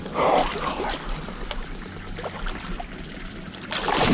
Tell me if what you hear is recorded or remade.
recorded